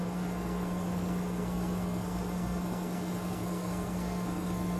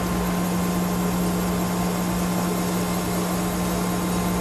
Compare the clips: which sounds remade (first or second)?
first